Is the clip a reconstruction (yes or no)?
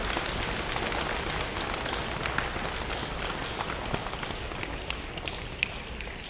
no